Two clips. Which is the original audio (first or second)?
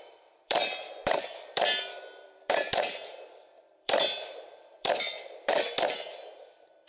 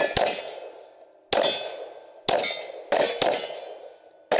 second